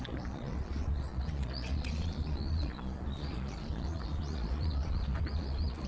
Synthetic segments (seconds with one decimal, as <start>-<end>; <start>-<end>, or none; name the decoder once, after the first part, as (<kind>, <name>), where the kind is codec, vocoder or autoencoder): 0.0-5.9 (vocoder, Vocos)